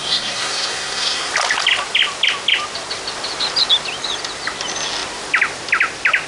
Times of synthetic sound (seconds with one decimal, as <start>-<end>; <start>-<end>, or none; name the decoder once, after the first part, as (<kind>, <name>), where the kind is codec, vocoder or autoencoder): 0.0-1.3 (codec, SNAC)